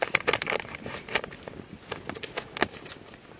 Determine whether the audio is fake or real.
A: real